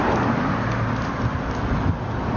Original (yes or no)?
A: yes